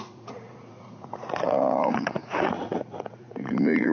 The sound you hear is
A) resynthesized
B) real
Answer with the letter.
A